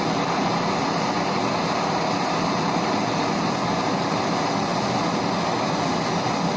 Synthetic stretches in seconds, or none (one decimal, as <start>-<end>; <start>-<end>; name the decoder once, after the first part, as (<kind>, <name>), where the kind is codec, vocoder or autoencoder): none